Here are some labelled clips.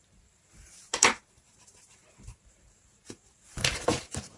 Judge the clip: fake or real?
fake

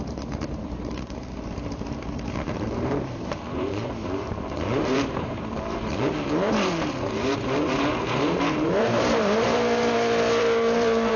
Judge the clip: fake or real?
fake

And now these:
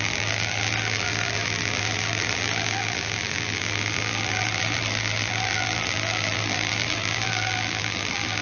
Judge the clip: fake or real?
fake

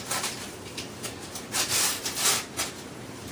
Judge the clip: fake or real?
fake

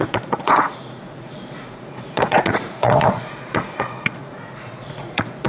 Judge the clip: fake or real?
fake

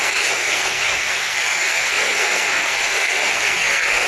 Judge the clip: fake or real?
fake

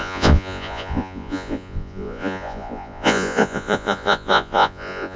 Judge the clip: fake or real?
fake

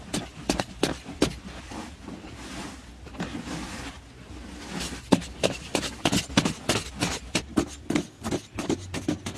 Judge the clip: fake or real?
real